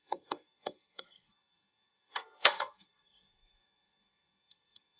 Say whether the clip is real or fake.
fake